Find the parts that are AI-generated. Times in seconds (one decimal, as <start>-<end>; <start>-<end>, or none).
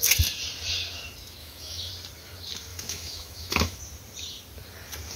1.4-1.9; 2.7-3.8